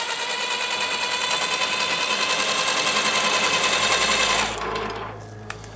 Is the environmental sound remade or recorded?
recorded